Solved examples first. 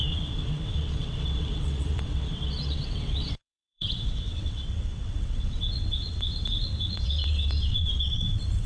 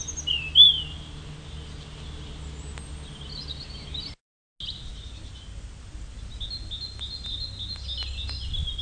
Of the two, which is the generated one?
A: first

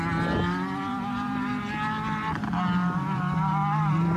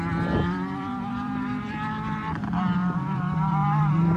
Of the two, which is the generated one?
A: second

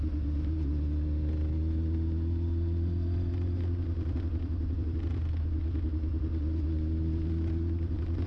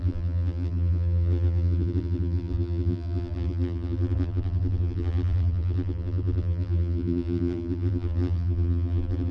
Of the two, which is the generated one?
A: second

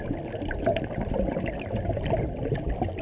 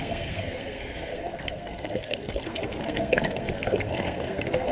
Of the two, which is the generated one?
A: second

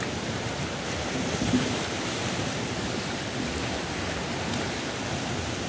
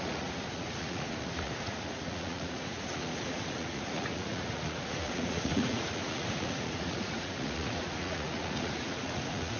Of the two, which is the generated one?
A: second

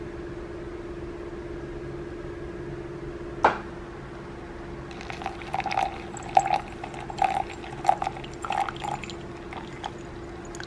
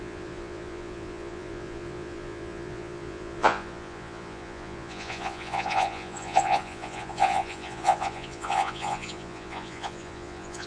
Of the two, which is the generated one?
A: second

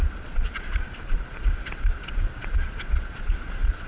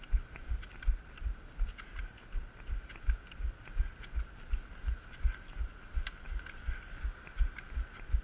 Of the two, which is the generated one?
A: first